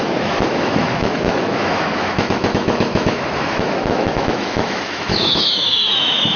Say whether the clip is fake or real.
fake